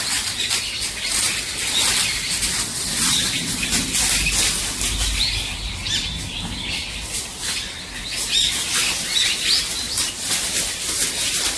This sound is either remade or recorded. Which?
recorded